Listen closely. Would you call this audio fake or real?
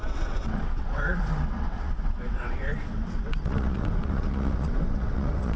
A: fake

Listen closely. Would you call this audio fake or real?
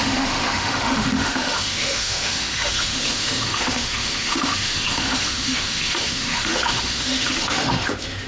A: fake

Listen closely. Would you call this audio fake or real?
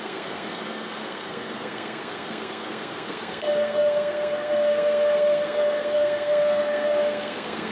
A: fake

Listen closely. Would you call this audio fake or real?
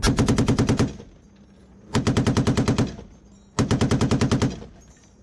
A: real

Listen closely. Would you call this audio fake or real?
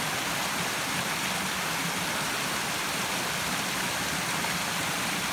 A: real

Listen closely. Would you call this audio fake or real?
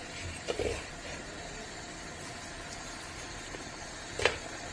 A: real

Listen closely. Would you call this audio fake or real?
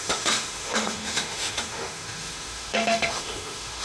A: fake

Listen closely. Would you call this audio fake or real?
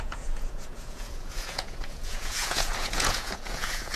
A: fake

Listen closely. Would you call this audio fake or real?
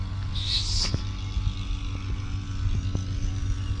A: real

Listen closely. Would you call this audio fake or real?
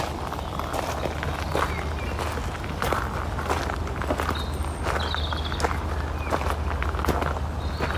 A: real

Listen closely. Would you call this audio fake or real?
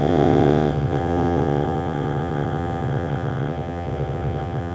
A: fake